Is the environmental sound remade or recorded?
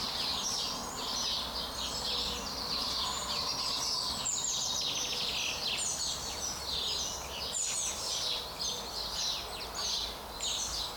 recorded